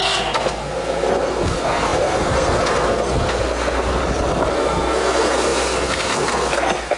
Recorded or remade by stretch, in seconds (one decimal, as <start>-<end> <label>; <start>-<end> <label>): 0.0-4.0 remade; 4.0-4.5 recorded; 4.5-7.0 remade

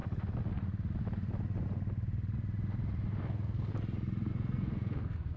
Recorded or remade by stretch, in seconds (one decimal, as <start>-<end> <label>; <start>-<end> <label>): 0.0-3.2 recorded; 3.2-3.7 remade; 3.7-4.3 recorded; 4.3-5.4 remade

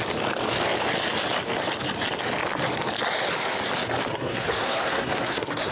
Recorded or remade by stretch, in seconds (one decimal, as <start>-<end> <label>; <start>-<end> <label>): 0.0-4.1 recorded; 4.1-5.7 remade

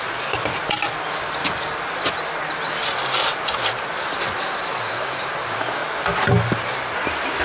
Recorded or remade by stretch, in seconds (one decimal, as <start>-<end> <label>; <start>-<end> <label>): 0.0-7.4 recorded

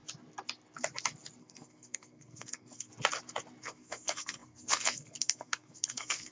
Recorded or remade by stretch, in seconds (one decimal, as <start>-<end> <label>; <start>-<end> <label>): 0.0-1.4 recorded; 1.4-2.9 remade; 2.9-3.6 recorded; 3.6-6.3 remade

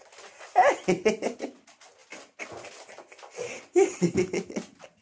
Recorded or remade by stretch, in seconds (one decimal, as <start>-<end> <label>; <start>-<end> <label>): 0.0-5.0 recorded

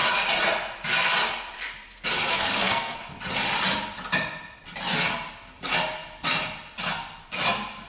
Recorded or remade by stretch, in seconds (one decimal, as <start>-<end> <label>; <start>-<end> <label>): 0.0-2.3 recorded; 2.3-3.0 remade; 3.0-7.9 recorded